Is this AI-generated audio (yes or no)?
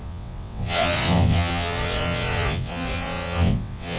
yes